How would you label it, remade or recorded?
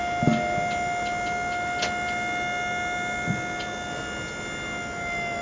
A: recorded